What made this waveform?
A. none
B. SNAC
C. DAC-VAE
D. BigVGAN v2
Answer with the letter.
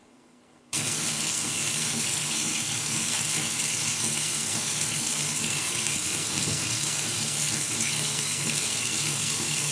B